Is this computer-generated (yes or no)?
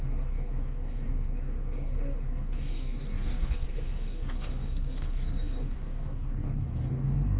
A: yes